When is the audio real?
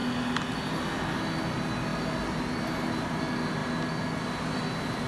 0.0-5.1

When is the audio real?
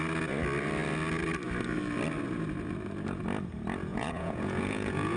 0.0-3.9